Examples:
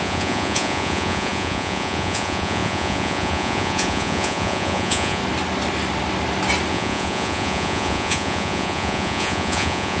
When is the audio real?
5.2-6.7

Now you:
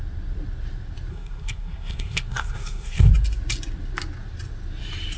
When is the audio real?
0.0-1.1; 3.1-5.2

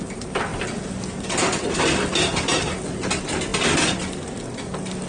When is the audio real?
0.0-5.1

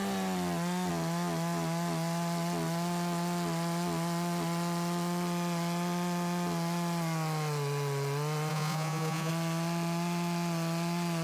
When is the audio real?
0.0-8.5; 9.3-11.2

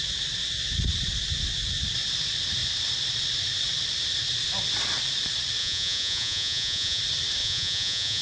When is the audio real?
0.0-5.6; 7.0-7.4

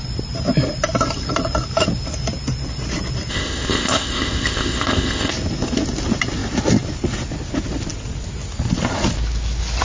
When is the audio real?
0.0-3.3; 5.3-9.8

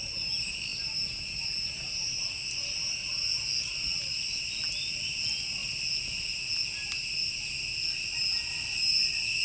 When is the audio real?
0.0-9.4